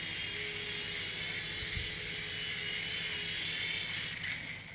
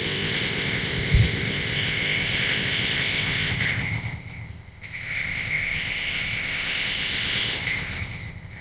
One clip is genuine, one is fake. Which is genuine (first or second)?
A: first